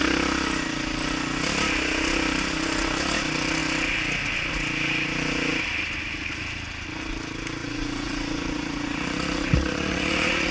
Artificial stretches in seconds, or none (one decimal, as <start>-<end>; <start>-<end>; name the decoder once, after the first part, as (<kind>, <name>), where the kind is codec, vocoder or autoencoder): 7.6-10.5 (vocoder, Vocos)